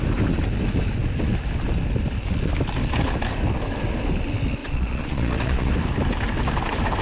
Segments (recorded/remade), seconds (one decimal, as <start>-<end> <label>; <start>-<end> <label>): 0.0-4.6 recorded; 4.6-5.7 remade; 5.7-7.0 recorded